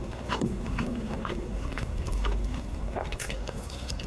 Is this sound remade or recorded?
remade